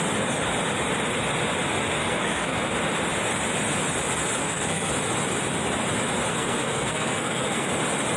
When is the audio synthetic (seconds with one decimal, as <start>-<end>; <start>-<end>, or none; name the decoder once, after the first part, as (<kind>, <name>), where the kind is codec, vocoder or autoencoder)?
2.0-2.7 (codec, SNAC); 4.4-4.9; 6.3-7.7